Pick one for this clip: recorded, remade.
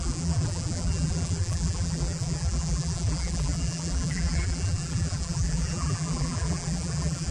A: remade